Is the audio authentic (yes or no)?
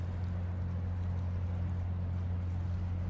yes